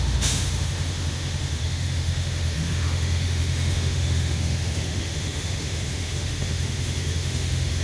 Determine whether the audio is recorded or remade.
remade